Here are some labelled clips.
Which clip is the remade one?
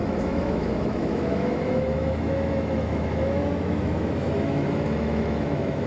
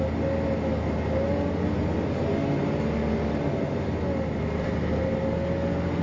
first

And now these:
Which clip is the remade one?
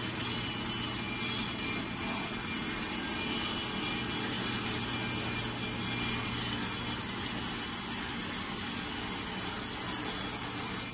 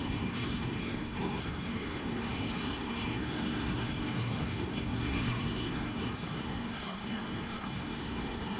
second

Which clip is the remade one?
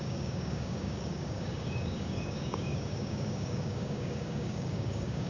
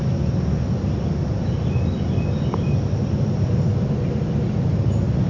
first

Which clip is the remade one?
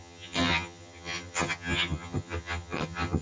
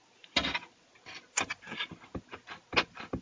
first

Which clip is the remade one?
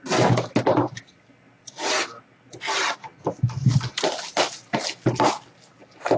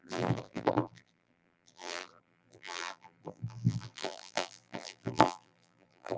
second